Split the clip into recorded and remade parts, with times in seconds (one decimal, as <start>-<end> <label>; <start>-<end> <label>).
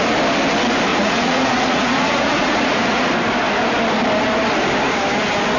0.0-0.9 recorded; 0.9-3.1 remade; 3.1-5.6 recorded